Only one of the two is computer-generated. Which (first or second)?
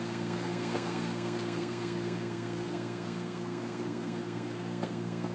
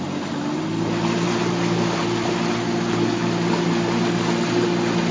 first